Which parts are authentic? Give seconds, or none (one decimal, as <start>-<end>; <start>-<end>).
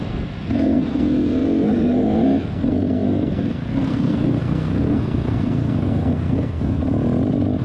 6.8-7.6